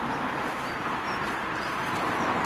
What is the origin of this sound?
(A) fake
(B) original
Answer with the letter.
A